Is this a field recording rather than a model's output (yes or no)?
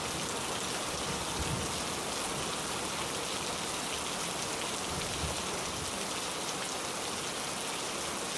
yes